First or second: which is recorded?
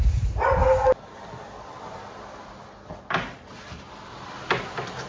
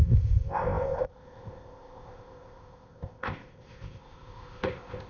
first